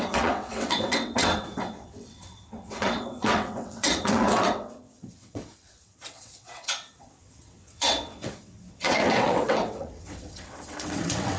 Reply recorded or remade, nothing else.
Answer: remade